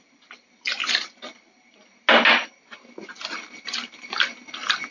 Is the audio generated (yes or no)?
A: no